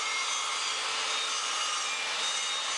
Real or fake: real